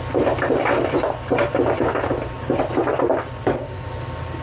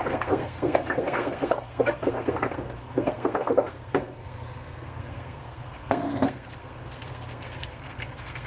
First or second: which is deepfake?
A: second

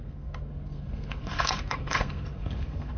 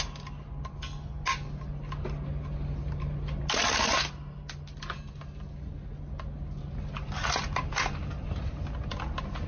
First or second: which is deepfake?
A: first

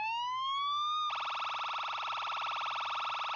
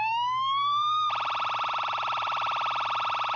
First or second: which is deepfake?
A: second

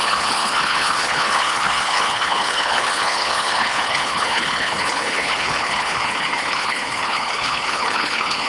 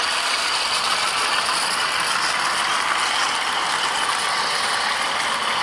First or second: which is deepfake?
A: first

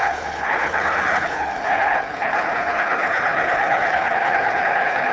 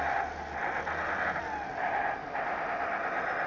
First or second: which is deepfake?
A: first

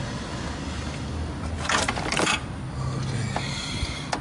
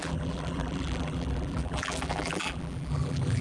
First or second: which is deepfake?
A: second